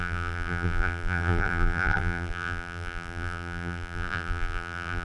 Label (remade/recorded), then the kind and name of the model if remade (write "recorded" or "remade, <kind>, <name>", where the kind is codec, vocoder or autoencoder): remade, vocoder, BigVGAN v2